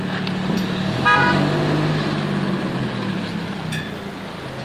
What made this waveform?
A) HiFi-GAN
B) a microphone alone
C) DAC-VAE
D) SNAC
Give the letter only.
B